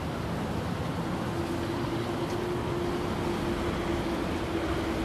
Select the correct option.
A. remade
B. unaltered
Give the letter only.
B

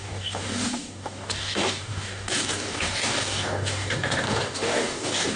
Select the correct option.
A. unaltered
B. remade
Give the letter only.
B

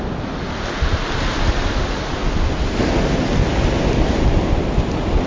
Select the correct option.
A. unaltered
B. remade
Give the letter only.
A